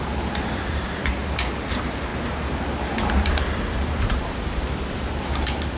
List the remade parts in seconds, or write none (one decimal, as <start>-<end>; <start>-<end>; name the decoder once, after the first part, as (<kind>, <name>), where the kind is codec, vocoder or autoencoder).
0.0-1.2 (vocoder, BigVGAN v2); 1.7-5.8